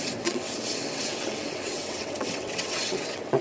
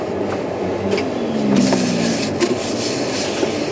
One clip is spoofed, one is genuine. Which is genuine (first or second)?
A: second